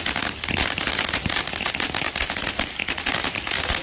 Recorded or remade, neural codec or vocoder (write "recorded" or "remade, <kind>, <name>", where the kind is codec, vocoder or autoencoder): recorded